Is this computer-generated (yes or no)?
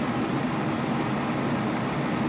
no